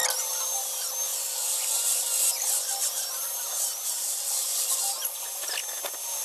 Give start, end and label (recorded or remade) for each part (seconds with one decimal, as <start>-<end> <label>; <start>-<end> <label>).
0.0-1.1 recorded; 1.1-4.8 remade; 4.8-6.2 recorded